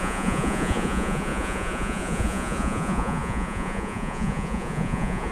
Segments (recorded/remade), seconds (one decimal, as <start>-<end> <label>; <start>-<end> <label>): 0.0-5.3 remade